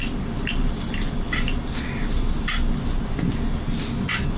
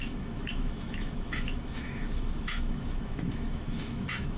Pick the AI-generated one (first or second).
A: second